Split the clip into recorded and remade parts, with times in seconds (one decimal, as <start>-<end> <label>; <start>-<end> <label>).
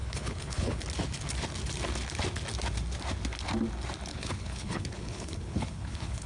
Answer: 0.0-0.8 remade; 0.8-4.1 recorded; 4.1-6.3 remade